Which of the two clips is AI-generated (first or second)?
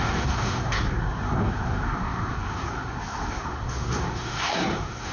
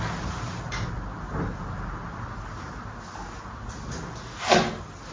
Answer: first